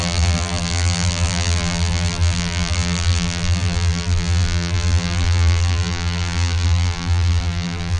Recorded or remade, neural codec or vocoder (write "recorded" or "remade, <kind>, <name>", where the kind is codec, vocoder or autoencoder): remade, vocoder, BigVGAN v2